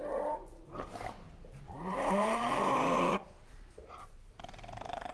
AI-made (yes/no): yes